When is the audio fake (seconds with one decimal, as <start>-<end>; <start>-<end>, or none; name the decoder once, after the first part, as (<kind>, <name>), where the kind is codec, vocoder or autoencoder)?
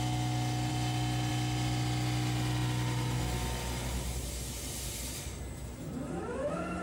none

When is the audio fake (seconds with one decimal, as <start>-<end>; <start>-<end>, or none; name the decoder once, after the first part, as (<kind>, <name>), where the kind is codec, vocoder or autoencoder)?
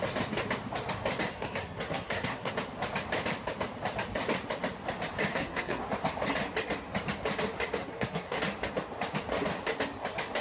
1.3-2.5 (codec, SNAC); 5.3-5.8; 7.8-8.4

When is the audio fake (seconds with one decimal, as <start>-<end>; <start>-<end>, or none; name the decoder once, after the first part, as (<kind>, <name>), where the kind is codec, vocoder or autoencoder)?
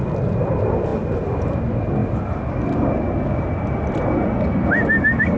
none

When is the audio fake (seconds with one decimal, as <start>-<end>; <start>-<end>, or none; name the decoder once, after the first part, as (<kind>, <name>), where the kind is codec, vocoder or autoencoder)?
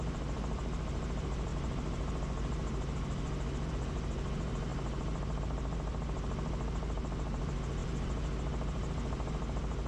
none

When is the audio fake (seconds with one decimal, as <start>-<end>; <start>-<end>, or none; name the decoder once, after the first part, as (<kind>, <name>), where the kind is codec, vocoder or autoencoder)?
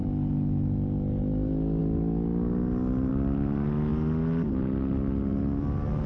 none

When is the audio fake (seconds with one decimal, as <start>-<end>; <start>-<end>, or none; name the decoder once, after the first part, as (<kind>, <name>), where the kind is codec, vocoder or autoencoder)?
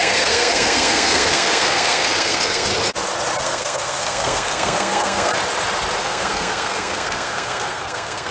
0.0-2.7 (codec, SNAC); 3.4-5.3; 6.0-8.3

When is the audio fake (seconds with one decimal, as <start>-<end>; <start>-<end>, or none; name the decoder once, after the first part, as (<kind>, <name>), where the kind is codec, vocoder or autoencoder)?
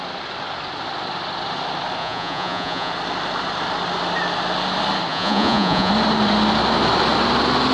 2.0-2.9 (vocoder, Vocos); 5.1-5.9